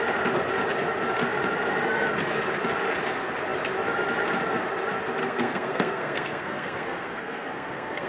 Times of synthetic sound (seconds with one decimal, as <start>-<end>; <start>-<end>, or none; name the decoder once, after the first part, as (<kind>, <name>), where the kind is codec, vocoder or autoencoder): 5.2-8.1 (codec, SNAC)